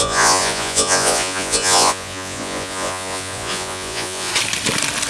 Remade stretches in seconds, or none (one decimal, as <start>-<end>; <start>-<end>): 0.0-4.3